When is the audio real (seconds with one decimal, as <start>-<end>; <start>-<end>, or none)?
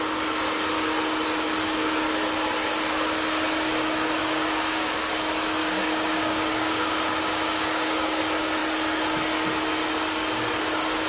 0.0-4.2; 5.1-5.6; 8.2-11.1